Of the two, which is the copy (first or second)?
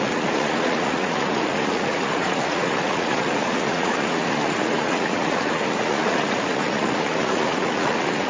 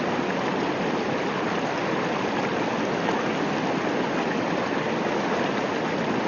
first